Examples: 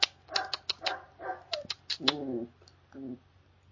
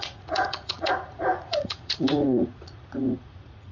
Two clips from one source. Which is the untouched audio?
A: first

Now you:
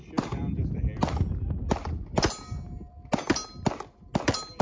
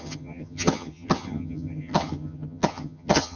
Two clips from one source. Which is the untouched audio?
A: first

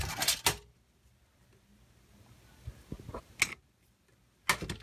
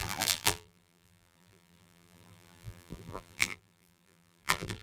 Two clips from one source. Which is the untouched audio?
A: first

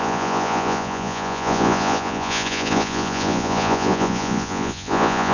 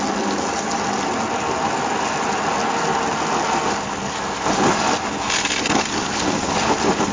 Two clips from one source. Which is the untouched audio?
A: second